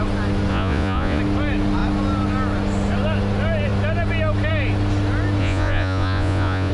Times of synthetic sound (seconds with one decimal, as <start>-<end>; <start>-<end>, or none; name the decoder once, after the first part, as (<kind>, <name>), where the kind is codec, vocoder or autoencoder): 0.5-1.2 (vocoder, Vocos); 5.4-6.7